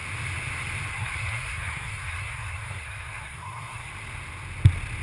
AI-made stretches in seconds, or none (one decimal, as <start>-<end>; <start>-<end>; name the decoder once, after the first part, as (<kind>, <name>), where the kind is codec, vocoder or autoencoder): 0.9-3.9 (codec, SNAC)